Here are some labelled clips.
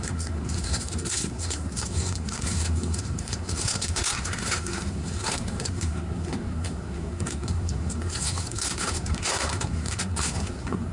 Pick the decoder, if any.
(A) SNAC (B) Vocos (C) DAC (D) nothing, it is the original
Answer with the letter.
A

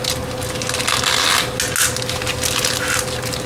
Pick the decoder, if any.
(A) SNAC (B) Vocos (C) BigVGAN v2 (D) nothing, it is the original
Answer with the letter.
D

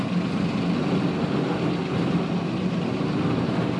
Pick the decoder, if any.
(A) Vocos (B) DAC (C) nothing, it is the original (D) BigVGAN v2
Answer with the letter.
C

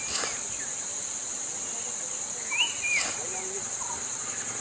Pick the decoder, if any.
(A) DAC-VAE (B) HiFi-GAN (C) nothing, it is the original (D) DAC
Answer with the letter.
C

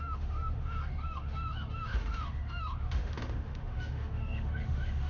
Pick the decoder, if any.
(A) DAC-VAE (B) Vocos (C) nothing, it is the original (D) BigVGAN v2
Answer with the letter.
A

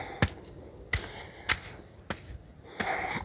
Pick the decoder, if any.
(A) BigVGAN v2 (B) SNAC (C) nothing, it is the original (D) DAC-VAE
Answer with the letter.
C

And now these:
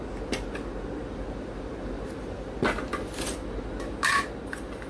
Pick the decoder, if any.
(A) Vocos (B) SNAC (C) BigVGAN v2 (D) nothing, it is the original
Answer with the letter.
D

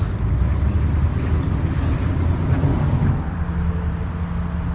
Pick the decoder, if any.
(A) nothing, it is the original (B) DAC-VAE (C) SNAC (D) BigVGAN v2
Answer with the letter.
A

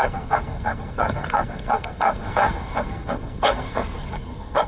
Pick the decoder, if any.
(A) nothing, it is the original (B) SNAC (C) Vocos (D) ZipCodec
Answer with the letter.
B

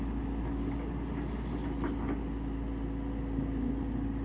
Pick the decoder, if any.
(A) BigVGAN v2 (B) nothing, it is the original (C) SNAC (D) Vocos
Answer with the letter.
B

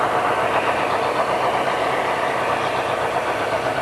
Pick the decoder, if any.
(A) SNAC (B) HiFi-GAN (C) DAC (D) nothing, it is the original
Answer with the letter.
D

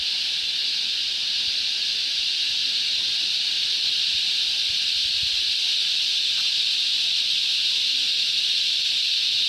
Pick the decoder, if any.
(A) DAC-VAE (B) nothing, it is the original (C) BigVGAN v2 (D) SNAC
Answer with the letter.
B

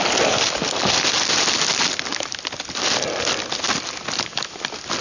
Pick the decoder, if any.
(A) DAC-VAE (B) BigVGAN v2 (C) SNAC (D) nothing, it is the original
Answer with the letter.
D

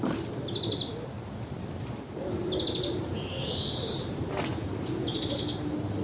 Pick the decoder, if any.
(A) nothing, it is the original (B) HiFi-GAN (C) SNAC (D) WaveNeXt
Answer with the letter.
A